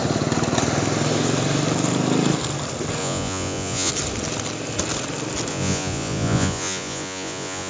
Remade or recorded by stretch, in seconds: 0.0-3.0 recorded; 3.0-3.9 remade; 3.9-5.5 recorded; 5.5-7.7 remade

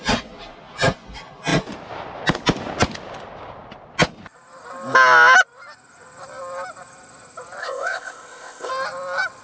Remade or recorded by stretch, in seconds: 0.0-7.6 recorded; 7.6-8.7 remade; 8.7-9.4 recorded

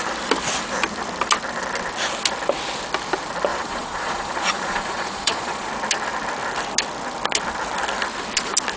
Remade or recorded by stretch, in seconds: 0.0-3.5 recorded; 3.5-5.7 remade; 5.7-8.8 recorded

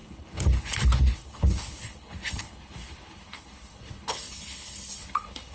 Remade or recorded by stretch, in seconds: 0.0-5.5 remade

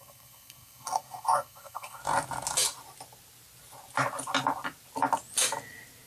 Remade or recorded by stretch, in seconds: 0.0-2.0 remade; 2.0-6.1 recorded

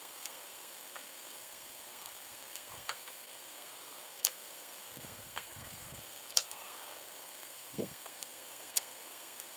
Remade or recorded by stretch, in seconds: 0.0-9.6 remade